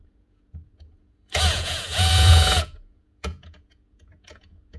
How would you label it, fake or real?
fake